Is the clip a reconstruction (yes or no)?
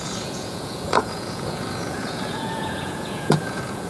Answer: yes